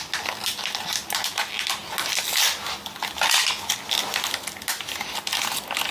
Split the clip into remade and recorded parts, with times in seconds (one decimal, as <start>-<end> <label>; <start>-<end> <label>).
0.0-5.9 recorded